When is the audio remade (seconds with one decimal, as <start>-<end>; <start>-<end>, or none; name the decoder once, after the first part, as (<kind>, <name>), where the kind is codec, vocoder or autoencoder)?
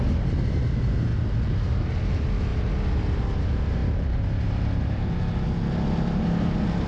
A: 1.1-2.1 (vocoder, BigVGAN v2)